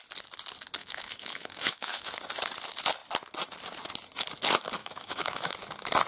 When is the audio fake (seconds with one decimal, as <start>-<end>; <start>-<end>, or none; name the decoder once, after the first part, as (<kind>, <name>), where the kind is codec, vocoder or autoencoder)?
0.8-2.1 (autoencoder, DAC-VAE); 4.8-5.5